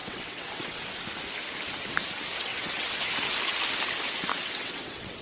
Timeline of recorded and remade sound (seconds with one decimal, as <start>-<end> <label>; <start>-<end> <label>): 0.0-0.8 remade; 0.8-2.5 recorded; 2.5-3.1 remade; 3.1-4.3 recorded; 4.3-5.2 remade